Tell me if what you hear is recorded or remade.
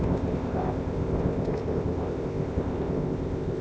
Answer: remade